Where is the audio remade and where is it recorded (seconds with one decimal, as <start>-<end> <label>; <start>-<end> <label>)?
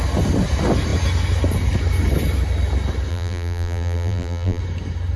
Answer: 0.0-3.1 recorded; 3.1-4.6 remade; 4.6-5.2 recorded